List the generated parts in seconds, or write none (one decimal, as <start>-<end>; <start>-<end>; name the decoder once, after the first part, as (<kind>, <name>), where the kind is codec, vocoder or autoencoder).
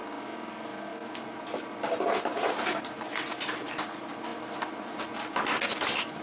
none